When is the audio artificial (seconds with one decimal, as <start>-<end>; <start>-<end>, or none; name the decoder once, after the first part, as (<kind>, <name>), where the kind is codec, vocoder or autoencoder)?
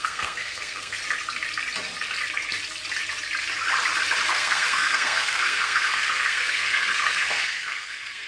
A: 0.0-1.0 (codec, SNAC); 4.3-8.3